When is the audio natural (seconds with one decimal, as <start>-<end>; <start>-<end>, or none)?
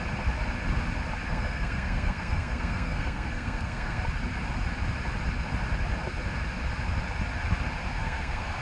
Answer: 0.0-1.3; 4.0-8.0